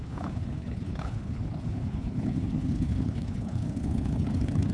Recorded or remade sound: remade